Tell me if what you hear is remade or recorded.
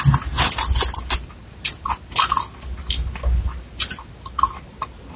recorded